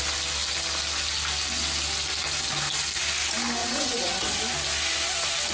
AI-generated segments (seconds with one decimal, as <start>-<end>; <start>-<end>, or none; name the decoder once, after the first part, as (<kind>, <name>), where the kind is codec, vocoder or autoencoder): 3.6-4.4 (vocoder, WaveNeXt)